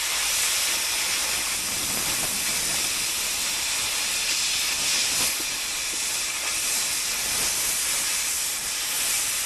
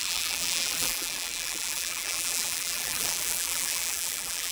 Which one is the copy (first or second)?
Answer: second